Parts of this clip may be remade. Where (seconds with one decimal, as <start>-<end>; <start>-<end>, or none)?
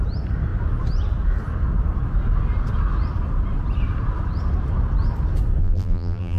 5.6-6.4